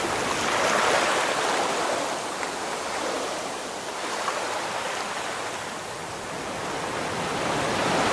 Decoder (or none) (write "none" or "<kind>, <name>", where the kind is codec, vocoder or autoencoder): none